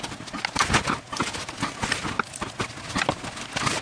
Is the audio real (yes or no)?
yes